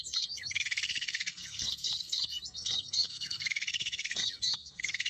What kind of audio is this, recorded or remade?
remade